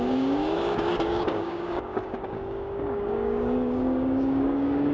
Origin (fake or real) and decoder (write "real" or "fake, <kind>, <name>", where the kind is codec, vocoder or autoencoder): fake, codec, DAC